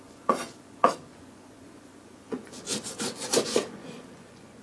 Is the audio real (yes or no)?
no